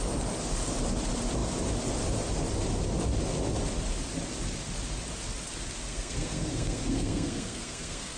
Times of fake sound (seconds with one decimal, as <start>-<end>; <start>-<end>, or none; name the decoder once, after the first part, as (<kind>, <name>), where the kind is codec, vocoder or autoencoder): 5.9-8.2 (codec, SNAC)